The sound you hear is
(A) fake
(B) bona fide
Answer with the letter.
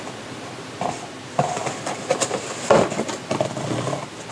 B